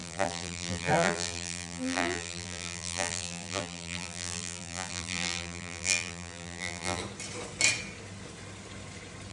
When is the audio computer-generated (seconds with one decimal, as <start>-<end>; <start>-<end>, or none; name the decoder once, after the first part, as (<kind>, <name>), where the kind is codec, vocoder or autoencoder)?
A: 0.0-7.0 (vocoder, BigVGAN v2)